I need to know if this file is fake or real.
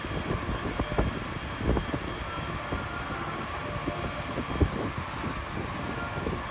real